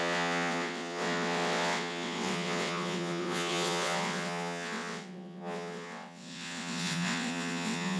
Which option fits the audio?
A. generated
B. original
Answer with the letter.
A